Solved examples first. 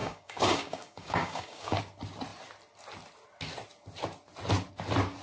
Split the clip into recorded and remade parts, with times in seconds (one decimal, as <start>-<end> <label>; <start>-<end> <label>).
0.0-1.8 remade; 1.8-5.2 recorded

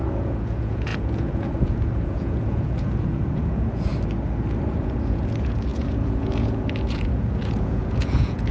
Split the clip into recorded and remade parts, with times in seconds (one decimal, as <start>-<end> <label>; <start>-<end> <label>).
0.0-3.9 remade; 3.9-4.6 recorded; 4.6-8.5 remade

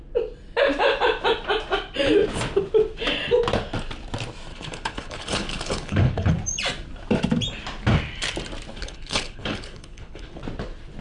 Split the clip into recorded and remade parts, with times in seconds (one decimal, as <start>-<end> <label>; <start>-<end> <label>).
0.0-4.5 recorded; 4.5-6.3 remade; 6.3-8.7 recorded; 8.7-10.4 remade; 10.4-11.0 recorded